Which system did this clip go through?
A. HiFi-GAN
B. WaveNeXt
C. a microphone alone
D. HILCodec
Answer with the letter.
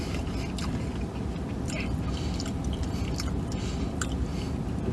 C